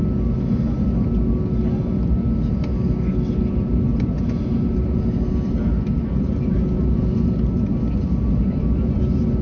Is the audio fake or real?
real